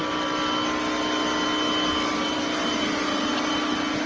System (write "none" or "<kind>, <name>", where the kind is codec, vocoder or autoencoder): none